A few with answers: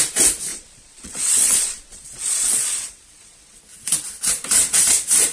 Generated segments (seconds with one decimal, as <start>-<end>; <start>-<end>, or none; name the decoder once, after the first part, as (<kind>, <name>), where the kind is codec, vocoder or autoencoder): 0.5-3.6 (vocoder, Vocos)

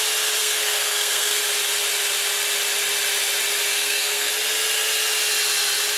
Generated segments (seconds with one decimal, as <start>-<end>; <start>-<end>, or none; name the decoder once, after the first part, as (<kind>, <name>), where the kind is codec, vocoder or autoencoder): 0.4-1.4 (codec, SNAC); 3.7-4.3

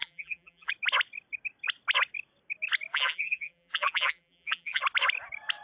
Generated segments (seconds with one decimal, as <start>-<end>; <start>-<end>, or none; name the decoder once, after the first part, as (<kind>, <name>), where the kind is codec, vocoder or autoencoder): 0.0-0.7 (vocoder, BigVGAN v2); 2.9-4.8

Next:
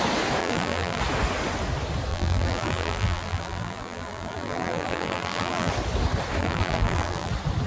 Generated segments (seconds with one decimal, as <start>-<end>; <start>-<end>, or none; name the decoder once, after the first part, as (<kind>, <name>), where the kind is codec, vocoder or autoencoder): 0.4-1.0 (vocoder, BigVGAN v2); 2.1-5.7; 6.4-7.3

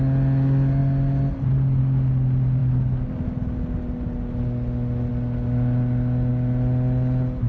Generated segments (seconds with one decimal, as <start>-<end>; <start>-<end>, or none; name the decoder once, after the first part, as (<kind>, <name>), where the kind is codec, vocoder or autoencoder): none